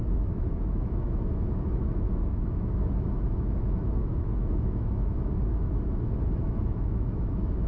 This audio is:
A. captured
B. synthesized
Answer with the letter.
B